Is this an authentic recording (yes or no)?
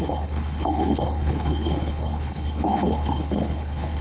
no